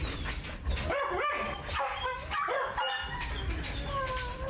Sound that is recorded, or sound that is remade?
recorded